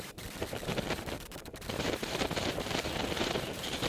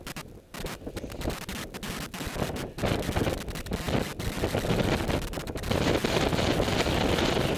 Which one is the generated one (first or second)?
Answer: first